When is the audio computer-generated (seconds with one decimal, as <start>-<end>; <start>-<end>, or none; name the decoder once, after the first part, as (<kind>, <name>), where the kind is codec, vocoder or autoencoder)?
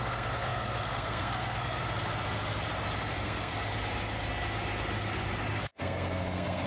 0.0-1.8 (codec, SNAC); 3.1-3.5; 5.6-6.7